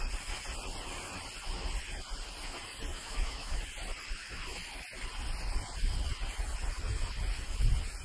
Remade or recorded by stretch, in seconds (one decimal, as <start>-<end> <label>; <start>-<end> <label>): 0.0-2.9 recorded; 2.9-3.6 remade; 3.6-8.0 recorded